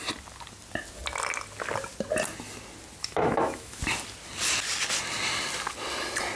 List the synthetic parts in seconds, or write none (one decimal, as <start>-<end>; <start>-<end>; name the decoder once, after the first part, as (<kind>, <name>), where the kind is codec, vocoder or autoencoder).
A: 3.0-3.8 (autoencoder, DAC-VAE)